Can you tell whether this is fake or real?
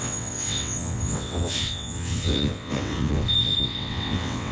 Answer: fake